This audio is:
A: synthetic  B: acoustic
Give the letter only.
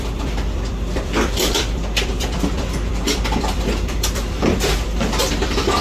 A